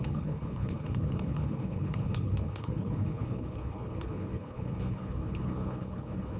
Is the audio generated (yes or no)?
yes